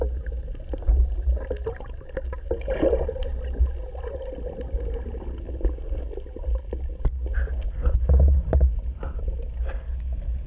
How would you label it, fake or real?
real